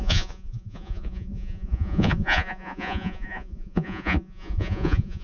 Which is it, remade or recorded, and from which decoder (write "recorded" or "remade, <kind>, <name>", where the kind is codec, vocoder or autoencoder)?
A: remade, vocoder, Vocos